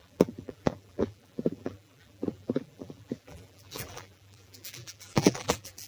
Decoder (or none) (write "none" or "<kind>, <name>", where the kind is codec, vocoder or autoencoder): vocoder, BigVGAN v2